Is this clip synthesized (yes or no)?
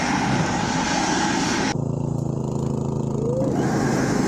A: no